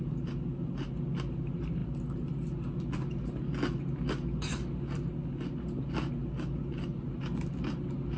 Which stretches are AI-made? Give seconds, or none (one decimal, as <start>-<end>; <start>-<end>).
none